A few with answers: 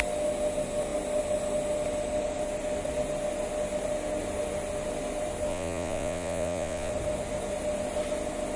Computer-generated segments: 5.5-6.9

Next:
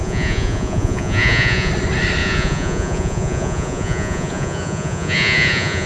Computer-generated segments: 0.0-1.7; 2.2-5.9

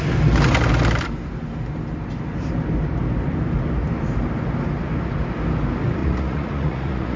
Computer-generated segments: 6.0-7.2

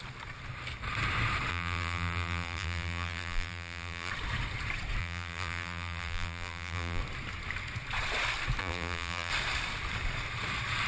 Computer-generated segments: 1.5-4.1; 5.0-7.0; 8.6-9.3

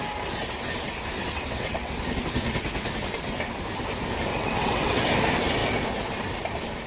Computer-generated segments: 1.2-1.9; 4.3-5.1

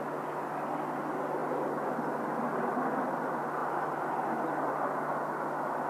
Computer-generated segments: none